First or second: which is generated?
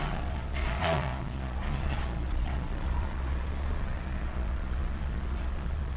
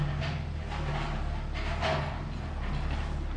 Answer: first